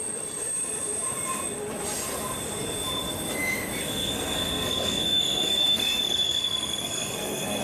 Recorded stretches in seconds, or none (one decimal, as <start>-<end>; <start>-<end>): 0.0-3.8